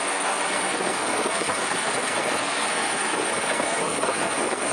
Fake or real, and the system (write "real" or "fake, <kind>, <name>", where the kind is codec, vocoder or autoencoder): fake, codec, SNAC